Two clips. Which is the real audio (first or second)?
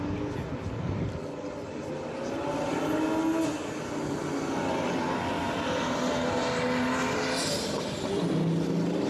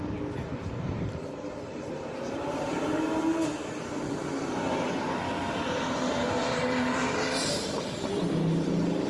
first